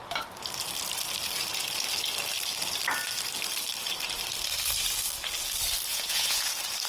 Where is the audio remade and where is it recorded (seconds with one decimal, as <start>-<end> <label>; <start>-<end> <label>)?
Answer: 0.0-5.9 recorded; 5.9-6.4 remade; 6.4-6.9 recorded